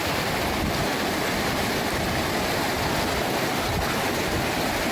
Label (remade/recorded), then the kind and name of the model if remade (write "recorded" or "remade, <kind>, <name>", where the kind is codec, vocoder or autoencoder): recorded